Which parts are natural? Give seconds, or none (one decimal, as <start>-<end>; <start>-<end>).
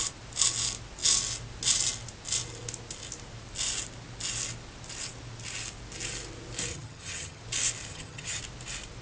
0.0-6.7; 7.4-7.9; 8.4-9.0